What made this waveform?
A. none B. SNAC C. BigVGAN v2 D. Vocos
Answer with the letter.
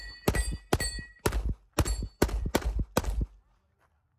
A